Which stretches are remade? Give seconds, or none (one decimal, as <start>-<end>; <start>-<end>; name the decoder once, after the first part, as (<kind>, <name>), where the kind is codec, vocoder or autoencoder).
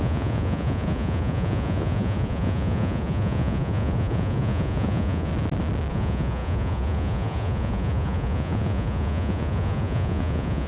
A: 0.0-5.3 (vocoder, Vocos); 5.9-10.7